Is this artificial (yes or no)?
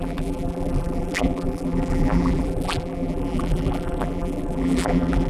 yes